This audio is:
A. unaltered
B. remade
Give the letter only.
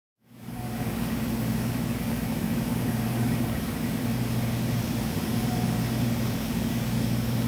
B